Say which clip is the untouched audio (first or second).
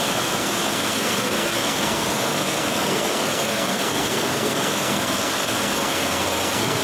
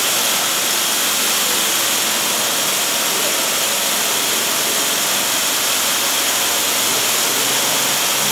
second